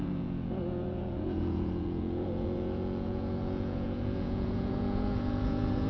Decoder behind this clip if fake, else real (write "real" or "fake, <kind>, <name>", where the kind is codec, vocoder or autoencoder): fake, vocoder, Vocos